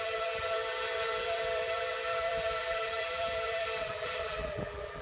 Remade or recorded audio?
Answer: remade